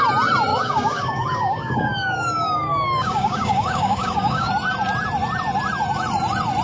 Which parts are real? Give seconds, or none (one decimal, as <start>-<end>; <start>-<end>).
0.0-0.5; 4.5-6.6